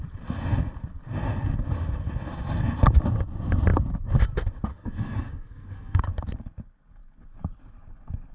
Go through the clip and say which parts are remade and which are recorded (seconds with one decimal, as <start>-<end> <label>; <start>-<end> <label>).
0.0-4.7 recorded; 4.7-6.0 remade; 6.0-8.3 recorded